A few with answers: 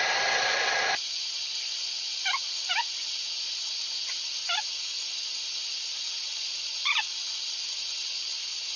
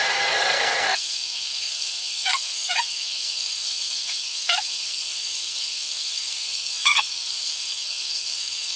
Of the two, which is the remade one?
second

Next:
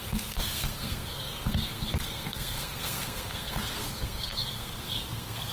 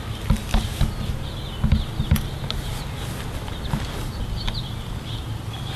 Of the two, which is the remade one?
first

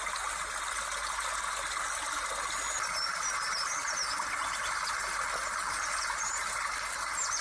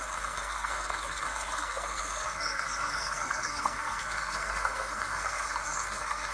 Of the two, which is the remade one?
second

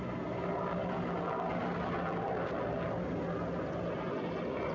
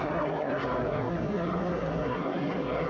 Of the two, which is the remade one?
second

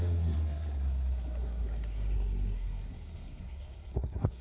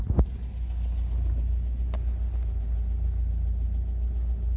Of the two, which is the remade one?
first